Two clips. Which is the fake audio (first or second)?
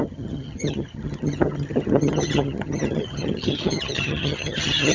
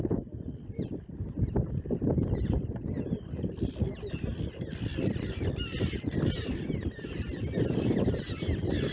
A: first